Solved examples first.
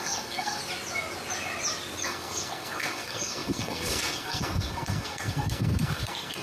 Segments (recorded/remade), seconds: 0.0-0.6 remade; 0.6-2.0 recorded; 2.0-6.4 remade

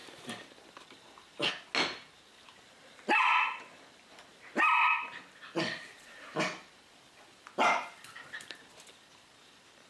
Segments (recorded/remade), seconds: 0.0-1.5 remade; 1.5-4.9 recorded; 4.9-7.8 remade; 7.8-9.9 recorded

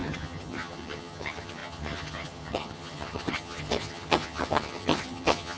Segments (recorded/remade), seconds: 0.0-5.6 remade

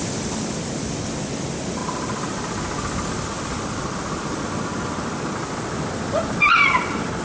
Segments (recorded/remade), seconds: 0.0-7.2 recorded